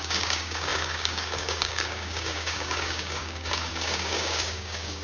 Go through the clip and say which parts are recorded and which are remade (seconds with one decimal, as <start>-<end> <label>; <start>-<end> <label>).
0.0-5.0 remade